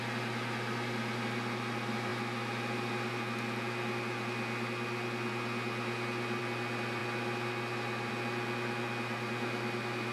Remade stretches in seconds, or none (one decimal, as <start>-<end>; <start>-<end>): none